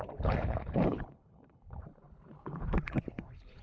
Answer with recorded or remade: remade